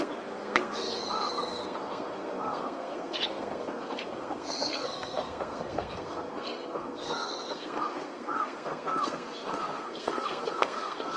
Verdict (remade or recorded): remade